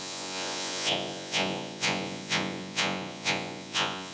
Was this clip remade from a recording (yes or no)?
yes